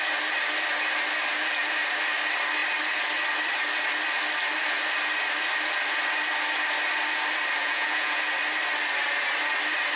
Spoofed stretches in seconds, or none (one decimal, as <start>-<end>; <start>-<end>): 7.6-8.2